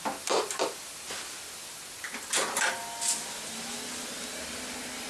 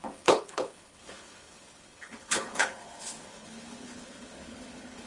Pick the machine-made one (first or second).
second